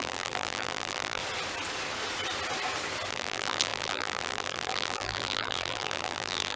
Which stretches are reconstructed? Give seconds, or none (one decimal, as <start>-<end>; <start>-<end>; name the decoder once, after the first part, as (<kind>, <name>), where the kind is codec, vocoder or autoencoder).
0.0-1.2 (vocoder, BigVGAN v2); 3.1-6.6